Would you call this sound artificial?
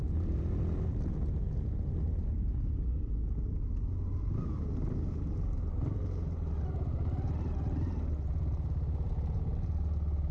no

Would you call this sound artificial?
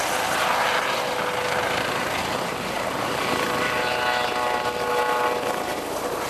no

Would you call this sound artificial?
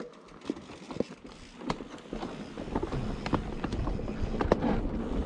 no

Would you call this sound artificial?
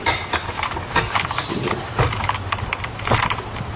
yes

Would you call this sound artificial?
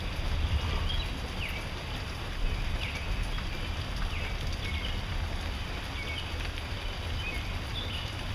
no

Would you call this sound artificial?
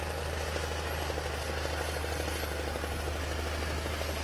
no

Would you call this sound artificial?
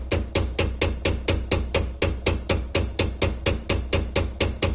no